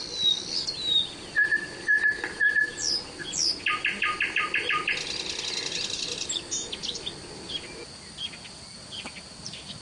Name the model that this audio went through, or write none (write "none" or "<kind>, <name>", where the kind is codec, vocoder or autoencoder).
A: none